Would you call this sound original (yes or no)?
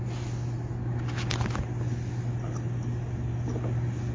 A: yes